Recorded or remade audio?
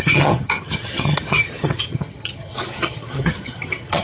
remade